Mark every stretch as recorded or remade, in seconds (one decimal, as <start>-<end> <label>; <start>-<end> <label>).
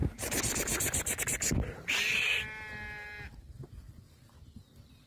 0.0-5.1 recorded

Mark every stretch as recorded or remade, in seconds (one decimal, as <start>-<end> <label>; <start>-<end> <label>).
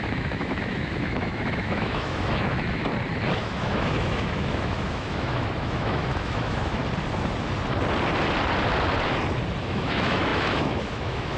0.0-2.9 remade; 2.9-3.4 recorded; 3.4-6.8 remade; 6.8-9.6 recorded; 9.6-11.4 remade